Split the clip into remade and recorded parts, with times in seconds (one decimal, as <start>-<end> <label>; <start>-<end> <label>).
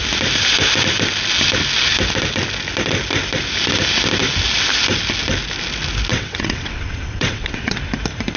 0.0-6.1 recorded; 6.1-7.8 remade; 7.8-8.4 recorded